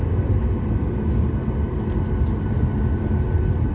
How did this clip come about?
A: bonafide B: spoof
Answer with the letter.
A